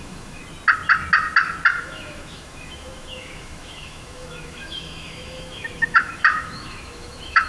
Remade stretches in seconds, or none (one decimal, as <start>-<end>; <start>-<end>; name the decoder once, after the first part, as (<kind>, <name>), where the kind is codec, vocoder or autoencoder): 0.0-0.4 (autoencoder, DAC-VAE); 1.8-7.5